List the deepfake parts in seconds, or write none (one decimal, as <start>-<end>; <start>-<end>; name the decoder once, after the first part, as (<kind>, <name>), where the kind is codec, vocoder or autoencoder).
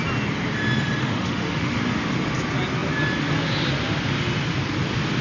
1.0-1.8 (autoencoder, DAC-VAE)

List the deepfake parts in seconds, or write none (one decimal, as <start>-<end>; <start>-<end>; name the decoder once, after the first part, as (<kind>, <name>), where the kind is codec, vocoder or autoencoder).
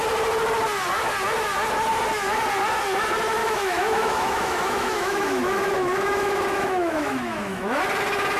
3.4-7.8 (autoencoder, DAC-VAE)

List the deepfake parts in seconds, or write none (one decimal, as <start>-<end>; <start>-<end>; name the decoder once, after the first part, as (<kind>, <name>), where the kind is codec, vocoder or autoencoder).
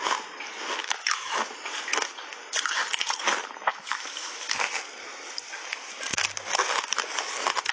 0.8-1.4 (autoencoder, DAC-VAE); 3.7-4.6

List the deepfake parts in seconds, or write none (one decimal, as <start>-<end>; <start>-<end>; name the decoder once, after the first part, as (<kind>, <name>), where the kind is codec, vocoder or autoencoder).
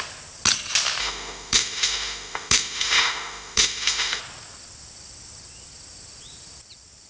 1.0-4.2 (autoencoder, DAC-VAE)